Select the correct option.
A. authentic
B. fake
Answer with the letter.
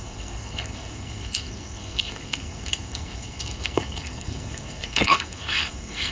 B